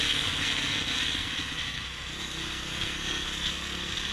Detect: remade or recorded remade